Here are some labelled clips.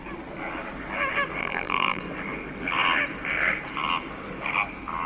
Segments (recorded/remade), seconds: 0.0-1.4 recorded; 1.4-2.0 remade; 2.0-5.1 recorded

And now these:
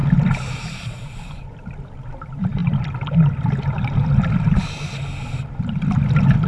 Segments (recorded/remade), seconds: 0.0-6.5 recorded

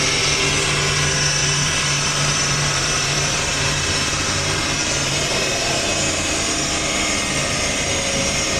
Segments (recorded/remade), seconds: 0.0-1.4 recorded; 1.4-5.8 remade; 5.8-8.6 recorded

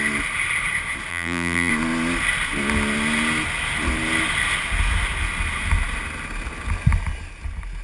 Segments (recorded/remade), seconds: 0.0-1.1 recorded; 1.1-1.7 remade; 1.7-7.8 recorded

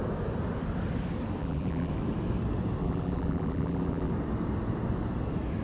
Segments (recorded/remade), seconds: 0.0-1.4 recorded; 1.4-1.9 remade; 1.9-2.8 recorded; 2.8-4.1 remade; 4.1-5.6 recorded

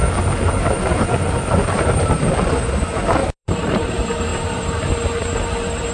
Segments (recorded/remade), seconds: 0.0-3.2 recorded; 3.2-3.9 remade; 3.9-4.3 recorded; 4.3-4.8 remade; 4.8-5.9 recorded